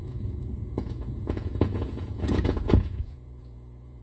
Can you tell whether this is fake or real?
fake